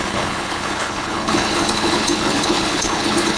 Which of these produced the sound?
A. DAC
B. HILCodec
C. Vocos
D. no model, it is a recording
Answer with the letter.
B